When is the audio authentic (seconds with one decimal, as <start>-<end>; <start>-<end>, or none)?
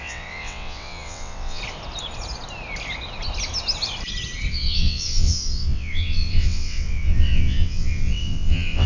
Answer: 1.6-4.5